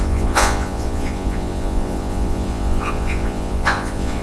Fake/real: fake